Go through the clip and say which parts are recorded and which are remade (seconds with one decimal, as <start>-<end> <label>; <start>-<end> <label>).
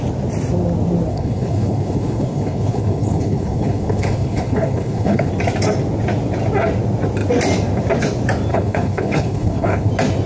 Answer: 0.0-1.1 recorded; 1.1-5.3 remade; 5.3-8.5 recorded; 8.5-9.9 remade; 9.9-10.3 recorded